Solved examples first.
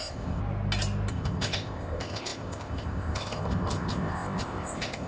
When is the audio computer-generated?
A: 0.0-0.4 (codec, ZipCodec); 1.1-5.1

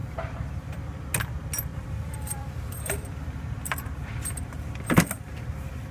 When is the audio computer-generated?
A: 0.0-0.7 (vocoder, BigVGAN v2); 1.7-5.2

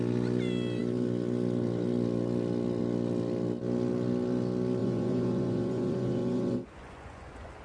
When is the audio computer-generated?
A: 4.8-7.6 (vocoder, Vocos)

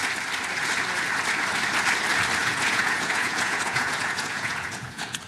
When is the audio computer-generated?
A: 2.4-5.3 (vocoder, Vocos)

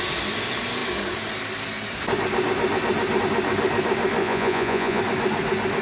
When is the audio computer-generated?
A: 4.2-5.0 (vocoder, Vocos)